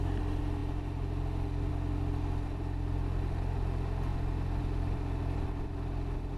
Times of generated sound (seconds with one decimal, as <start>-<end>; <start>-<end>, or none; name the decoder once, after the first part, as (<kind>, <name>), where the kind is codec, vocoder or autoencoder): none